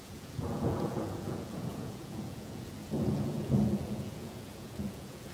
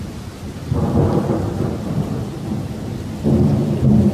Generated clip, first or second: first